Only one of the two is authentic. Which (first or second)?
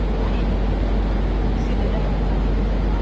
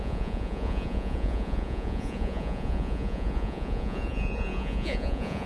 first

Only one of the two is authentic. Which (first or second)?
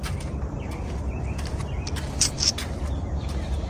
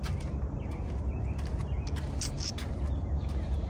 second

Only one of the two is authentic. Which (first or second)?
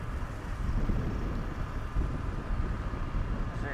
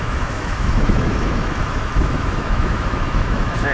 first